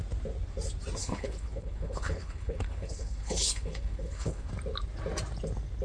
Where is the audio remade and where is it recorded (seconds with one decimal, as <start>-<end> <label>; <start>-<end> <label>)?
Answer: 0.0-1.0 recorded; 1.0-4.5 remade; 4.5-5.8 recorded